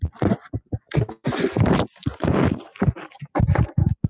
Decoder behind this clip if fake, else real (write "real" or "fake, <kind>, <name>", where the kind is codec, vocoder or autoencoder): fake, vocoder, BigVGAN v2